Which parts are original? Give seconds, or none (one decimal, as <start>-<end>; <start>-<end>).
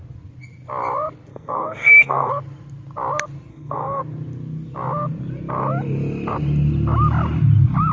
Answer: 0.0-1.3; 2.3-3.5; 4.0-7.9